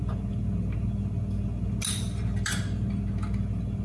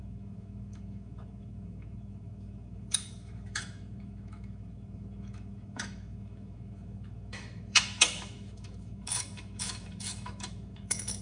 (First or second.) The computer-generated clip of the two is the second